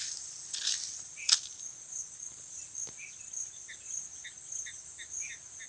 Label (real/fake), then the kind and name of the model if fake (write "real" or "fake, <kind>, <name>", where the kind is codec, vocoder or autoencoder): real